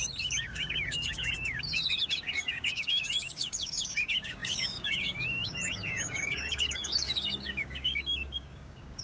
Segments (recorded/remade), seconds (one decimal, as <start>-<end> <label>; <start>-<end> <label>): 0.0-9.0 remade